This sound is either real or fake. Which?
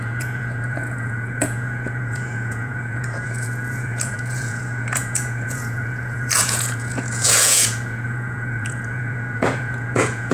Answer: fake